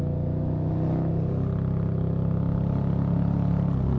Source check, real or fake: real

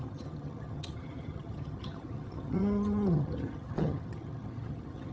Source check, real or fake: fake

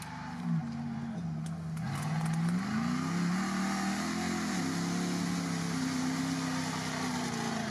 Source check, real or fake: real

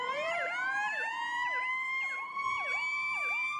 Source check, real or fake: fake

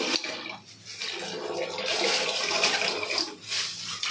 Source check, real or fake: real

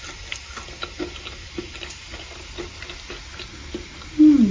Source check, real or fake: real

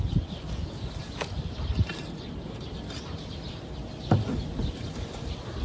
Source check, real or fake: real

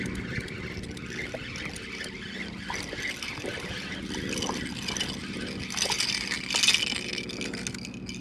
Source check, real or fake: real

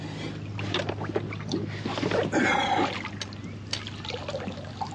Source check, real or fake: real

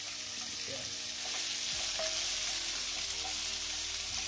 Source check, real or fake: real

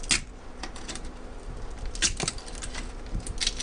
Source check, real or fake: real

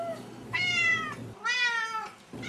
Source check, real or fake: real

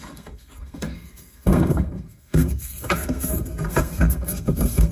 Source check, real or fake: fake